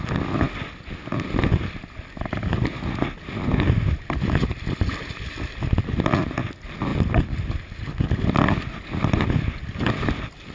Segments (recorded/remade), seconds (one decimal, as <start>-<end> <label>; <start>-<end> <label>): 0.0-10.5 recorded